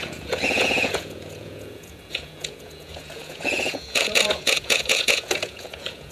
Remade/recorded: remade